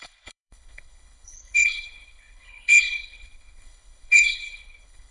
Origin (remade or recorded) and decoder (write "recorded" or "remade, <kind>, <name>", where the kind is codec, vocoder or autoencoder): remade, codec, HILCodec